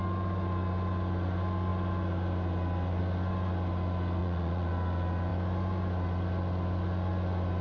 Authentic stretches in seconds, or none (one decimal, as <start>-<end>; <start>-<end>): 0.0-4.2; 4.7-7.6